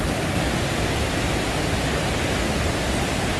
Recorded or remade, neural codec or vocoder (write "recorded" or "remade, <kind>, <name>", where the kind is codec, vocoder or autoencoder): recorded